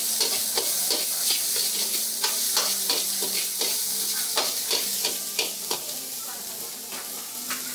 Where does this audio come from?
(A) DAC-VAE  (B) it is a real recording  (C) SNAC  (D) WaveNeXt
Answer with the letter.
B